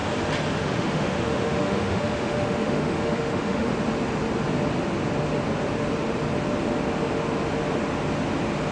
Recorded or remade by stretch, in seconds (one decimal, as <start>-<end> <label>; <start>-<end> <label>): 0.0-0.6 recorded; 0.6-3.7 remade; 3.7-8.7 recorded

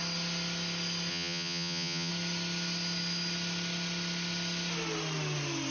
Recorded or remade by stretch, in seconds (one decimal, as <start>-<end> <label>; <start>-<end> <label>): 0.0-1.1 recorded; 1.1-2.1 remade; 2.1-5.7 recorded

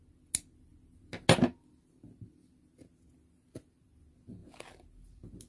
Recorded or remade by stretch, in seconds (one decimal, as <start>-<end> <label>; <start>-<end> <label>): 0.0-5.5 recorded

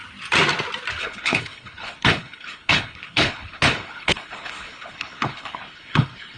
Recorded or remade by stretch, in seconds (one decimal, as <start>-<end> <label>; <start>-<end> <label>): 0.0-1.0 recorded; 1.0-6.4 remade

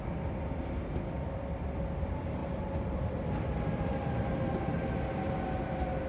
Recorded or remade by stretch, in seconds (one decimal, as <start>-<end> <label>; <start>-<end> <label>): 0.0-6.1 recorded

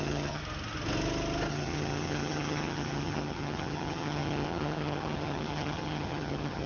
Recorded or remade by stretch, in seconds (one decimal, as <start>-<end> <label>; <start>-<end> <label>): 0.0-0.4 remade; 0.4-1.5 recorded; 1.5-6.7 remade